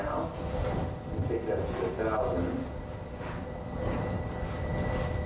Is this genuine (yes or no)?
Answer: yes